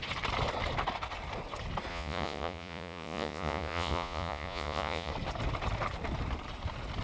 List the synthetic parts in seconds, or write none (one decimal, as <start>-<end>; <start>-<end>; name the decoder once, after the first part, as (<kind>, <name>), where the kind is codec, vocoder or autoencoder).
1.9-5.1 (vocoder, Vocos)